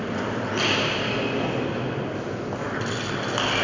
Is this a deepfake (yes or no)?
no